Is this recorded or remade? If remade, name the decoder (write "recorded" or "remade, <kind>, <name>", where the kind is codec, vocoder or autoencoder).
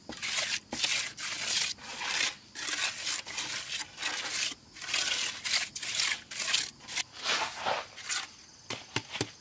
recorded